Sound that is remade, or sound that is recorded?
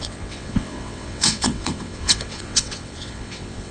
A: remade